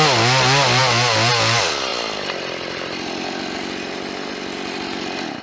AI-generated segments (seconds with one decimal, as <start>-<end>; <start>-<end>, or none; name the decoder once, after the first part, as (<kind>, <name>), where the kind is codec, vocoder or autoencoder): none